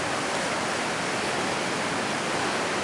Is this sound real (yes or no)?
yes